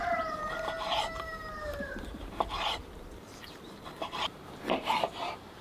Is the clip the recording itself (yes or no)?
no